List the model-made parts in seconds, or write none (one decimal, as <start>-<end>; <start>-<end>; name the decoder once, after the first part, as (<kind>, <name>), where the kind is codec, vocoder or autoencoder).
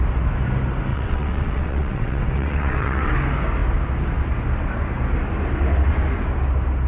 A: 0.9-3.1 (vocoder, WaveNeXt)